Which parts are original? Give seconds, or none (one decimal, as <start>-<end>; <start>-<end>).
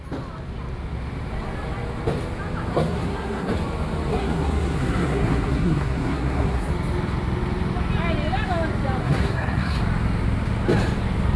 0.0-2.7; 3.5-4.1; 6.7-9.0; 9.8-11.4